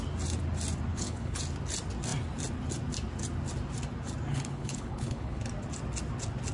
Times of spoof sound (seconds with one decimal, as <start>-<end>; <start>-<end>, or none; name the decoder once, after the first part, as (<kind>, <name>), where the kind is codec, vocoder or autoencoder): 0.9-1.4 (codec, HILCodec); 4.3-5.4